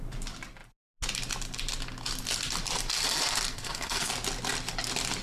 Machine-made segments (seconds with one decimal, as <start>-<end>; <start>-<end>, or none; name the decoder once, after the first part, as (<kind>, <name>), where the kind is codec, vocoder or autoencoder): 3.5-4.1 (codec, SNAC)